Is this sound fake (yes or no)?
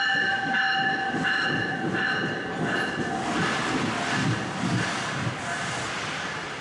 no